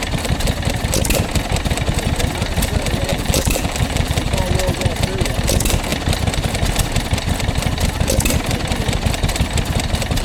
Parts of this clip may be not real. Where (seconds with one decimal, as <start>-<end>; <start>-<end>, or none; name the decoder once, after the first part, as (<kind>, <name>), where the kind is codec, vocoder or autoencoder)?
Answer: 3.1-4.3 (vocoder, BigVGAN v2)